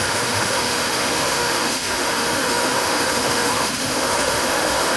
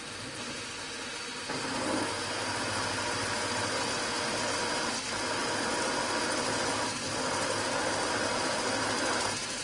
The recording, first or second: second